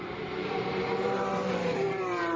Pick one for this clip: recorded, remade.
remade